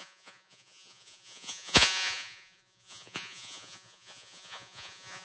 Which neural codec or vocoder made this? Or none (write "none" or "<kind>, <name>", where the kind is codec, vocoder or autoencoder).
vocoder, Vocos